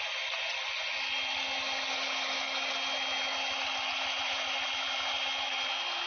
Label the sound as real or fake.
real